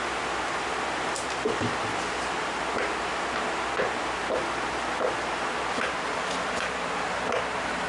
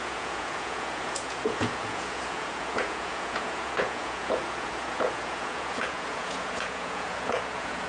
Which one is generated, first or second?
second